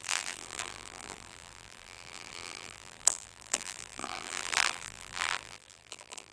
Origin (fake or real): fake